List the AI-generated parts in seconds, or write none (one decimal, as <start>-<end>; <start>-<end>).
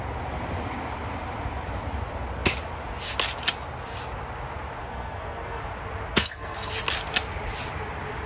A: 4.8-5.6; 6.1-6.7